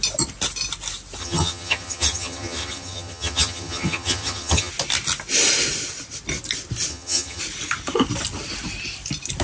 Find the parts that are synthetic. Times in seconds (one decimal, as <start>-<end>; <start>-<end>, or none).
1.2-4.7; 6.9-7.4